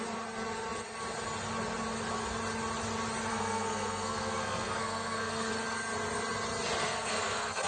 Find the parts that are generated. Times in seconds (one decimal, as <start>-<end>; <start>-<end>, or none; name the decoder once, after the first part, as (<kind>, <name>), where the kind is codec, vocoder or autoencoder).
3.3-5.5 (codec, SNAC); 6.8-7.7